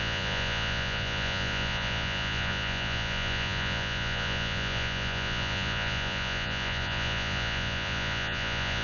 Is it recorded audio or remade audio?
remade